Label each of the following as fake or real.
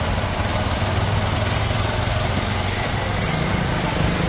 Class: real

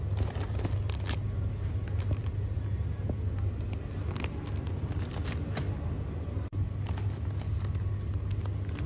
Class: real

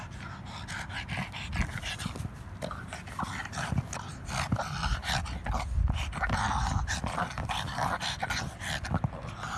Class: real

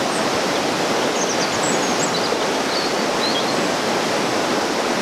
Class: real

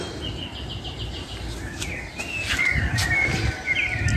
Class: real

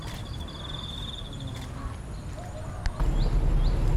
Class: real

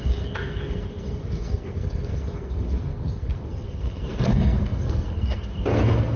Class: fake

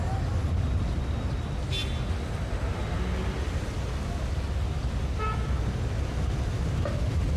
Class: real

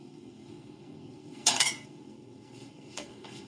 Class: fake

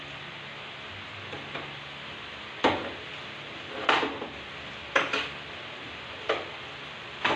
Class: real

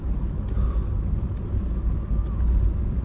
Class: real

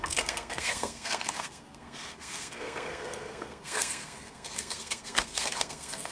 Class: fake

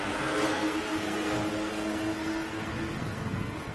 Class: fake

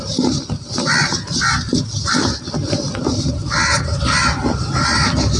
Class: real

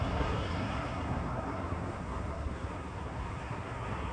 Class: fake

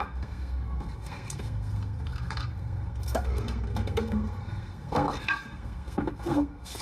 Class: fake